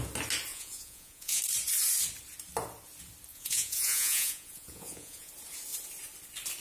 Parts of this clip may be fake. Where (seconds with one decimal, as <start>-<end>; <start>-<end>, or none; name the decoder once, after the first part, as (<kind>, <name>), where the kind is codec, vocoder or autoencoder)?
0.5-1.4 (vocoder, Vocos); 3.3-5.3